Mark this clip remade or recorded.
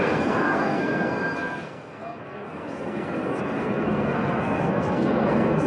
remade